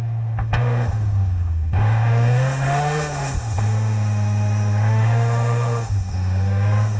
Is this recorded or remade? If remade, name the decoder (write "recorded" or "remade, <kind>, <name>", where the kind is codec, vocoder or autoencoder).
remade, autoencoder, DAC-VAE